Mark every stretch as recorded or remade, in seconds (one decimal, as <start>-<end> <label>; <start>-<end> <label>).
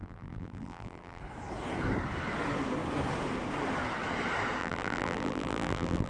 0.0-1.2 remade; 1.2-4.6 recorded; 4.6-6.1 remade